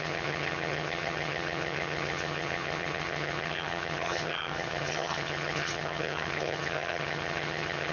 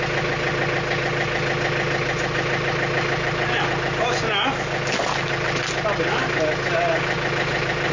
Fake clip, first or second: first